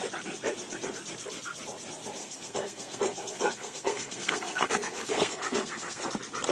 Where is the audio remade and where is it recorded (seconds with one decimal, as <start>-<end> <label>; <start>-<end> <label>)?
0.0-2.2 recorded; 2.2-6.1 remade; 6.1-6.5 recorded